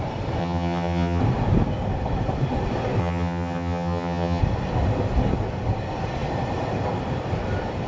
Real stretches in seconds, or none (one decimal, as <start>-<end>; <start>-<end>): 0.0-0.4; 1.2-3.0; 4.4-7.9